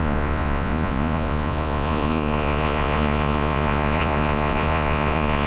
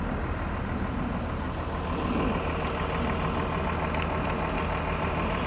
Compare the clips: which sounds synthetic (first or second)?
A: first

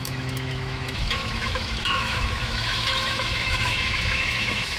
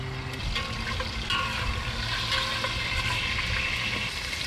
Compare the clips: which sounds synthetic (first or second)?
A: first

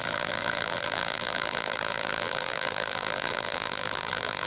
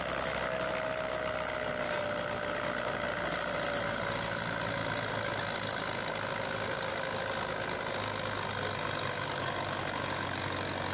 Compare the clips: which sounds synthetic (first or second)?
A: first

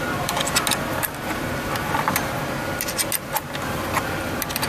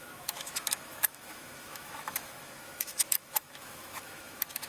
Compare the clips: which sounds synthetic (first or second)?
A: second